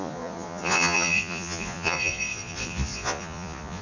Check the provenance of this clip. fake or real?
fake